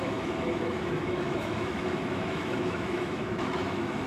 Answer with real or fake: fake